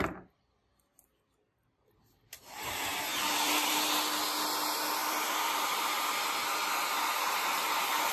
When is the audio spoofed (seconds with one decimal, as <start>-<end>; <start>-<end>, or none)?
3.1-3.7; 5.0-6.3